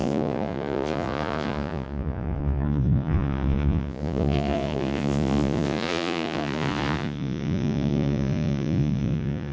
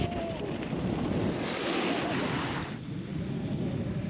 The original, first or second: second